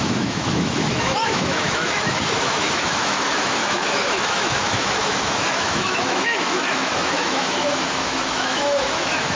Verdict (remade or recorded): remade